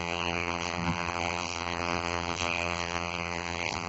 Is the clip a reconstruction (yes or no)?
yes